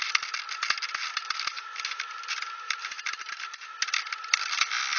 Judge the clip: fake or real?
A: real